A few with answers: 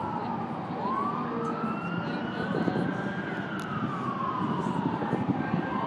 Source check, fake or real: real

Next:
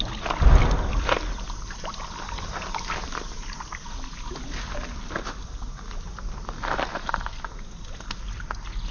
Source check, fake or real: real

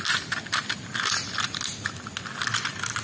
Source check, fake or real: real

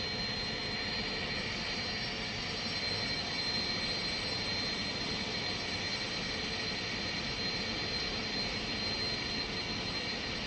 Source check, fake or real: real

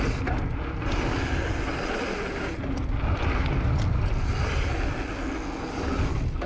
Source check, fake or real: real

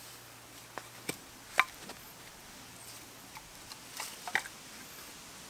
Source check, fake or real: real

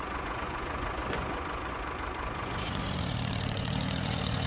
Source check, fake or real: fake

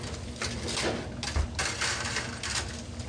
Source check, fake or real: real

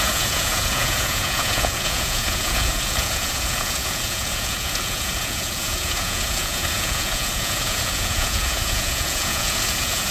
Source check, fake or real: fake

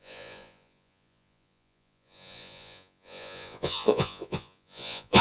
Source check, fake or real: fake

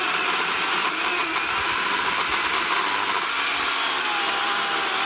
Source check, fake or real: real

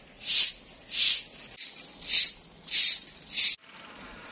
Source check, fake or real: real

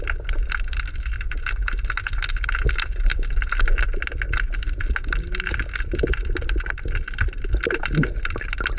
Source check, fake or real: real